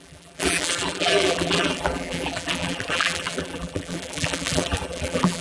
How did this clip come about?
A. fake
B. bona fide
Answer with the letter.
A